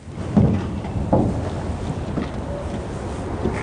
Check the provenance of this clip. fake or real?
real